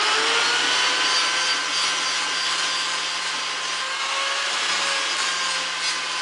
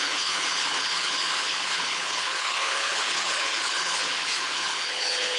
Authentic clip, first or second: first